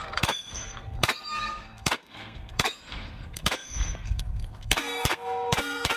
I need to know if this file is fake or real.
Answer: fake